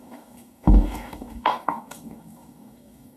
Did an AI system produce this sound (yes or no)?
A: yes